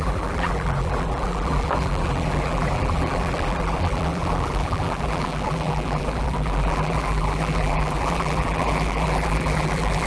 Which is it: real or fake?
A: fake